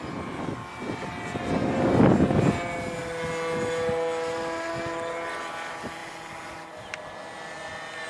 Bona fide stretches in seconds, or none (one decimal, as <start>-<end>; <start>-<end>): 0.0-8.1

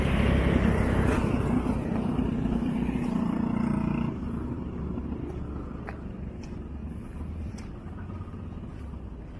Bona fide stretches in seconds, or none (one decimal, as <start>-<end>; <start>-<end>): 0.0-6.8; 7.5-9.4

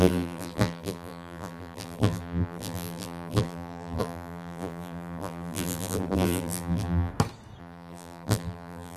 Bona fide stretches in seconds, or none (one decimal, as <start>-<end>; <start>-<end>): 7.1-7.6

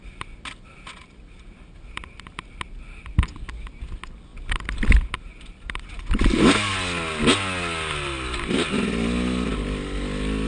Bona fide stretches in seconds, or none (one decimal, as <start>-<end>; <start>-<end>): 0.0-1.0; 2.4-5.3; 6.7-10.5

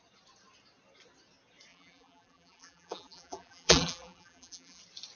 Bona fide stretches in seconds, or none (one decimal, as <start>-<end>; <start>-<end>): 0.0-1.7; 4.8-5.2

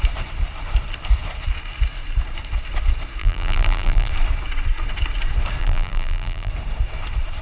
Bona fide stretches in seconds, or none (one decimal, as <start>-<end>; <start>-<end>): 0.0-3.2; 4.1-5.6; 6.5-7.4